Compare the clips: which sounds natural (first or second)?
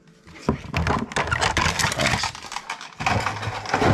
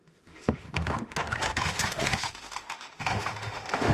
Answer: first